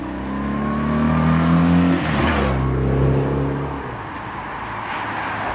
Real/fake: real